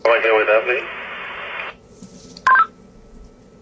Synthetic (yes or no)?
no